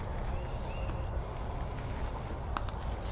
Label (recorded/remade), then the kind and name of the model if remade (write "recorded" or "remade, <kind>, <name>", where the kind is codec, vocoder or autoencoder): recorded